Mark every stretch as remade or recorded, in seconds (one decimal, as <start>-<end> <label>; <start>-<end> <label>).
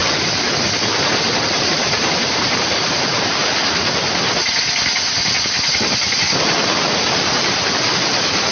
0.0-1.7 recorded; 1.7-3.4 remade; 3.4-7.3 recorded; 7.3-8.5 remade